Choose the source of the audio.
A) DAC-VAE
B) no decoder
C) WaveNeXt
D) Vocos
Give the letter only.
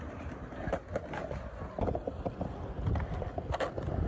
B